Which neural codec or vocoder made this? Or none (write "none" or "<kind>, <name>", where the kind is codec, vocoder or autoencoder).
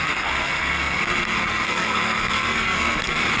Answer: codec, SNAC